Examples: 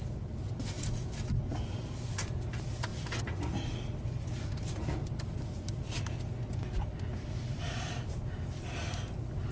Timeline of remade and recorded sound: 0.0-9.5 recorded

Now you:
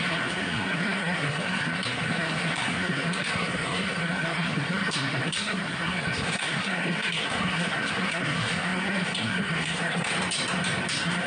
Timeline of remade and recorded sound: 0.0-10.1 remade; 10.1-10.9 recorded; 10.9-11.3 remade

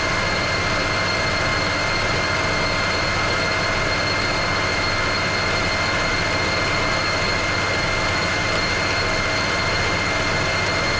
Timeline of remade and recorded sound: 0.0-11.0 recorded

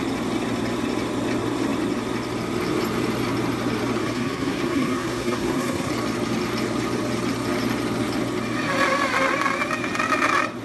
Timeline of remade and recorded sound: 0.0-4.0 recorded; 4.0-5.9 remade; 5.9-10.6 recorded

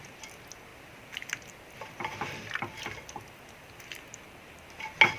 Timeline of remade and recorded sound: 0.0-5.2 recorded

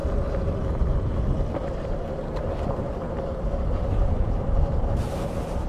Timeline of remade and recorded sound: 0.0-1.6 recorded; 1.6-5.0 remade; 5.0-5.7 recorded

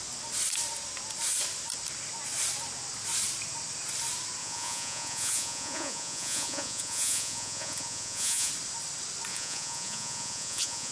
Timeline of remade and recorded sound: 0.0-4.4 recorded; 4.4-8.5 remade; 8.5-9.3 recorded; 9.3-10.9 remade